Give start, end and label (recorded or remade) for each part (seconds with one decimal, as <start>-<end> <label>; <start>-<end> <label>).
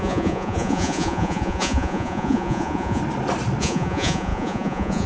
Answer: 0.0-3.0 remade; 3.0-3.6 recorded; 3.6-5.1 remade